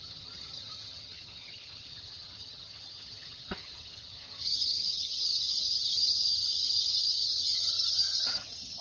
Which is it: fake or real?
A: fake